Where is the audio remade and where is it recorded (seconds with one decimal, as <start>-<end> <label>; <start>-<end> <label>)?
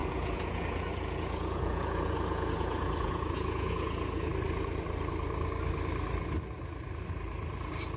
0.0-4.3 remade; 4.3-8.0 recorded